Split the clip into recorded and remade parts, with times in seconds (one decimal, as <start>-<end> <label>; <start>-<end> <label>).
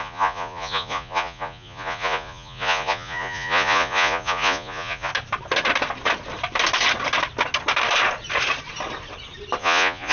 0.0-5.1 remade; 5.1-9.6 recorded; 9.6-10.1 remade